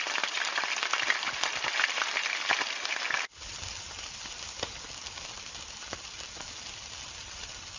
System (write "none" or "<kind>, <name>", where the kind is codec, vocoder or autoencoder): none